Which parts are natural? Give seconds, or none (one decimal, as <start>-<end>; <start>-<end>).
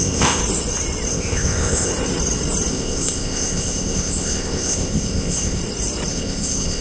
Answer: 0.4-1.1; 1.9-2.7; 5.6-6.1